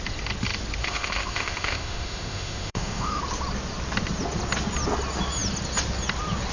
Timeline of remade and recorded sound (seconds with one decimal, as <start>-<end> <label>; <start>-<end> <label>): 0.0-0.8 recorded; 0.8-3.2 remade; 3.2-6.5 recorded